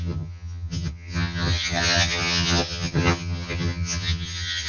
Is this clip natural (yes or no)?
no